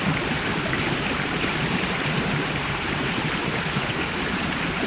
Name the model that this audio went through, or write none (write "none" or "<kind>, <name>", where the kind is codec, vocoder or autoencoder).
vocoder, BigVGAN v2